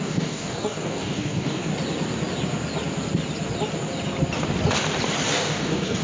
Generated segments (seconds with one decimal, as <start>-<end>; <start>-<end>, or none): 0.0-1.7; 5.3-6.0